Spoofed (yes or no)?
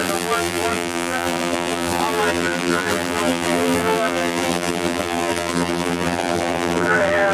yes